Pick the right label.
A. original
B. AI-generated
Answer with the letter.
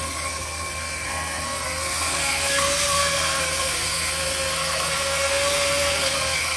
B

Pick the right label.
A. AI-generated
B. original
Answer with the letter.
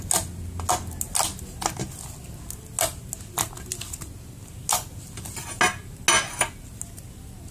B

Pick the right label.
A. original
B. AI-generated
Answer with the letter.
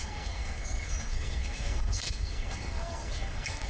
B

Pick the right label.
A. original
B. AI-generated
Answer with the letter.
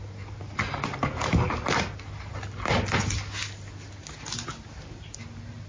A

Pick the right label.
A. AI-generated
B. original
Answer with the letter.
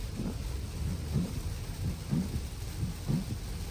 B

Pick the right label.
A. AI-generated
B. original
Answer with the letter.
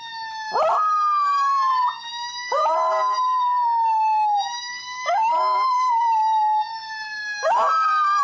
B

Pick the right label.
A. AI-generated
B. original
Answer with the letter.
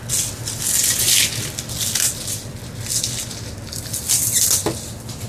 B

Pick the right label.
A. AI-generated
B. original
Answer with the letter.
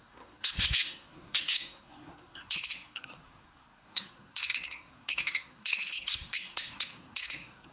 A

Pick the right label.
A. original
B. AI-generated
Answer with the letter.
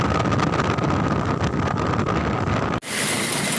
A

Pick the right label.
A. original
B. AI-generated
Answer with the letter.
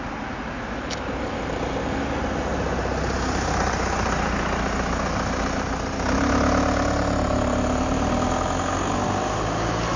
A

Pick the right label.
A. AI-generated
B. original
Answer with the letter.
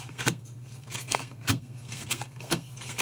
A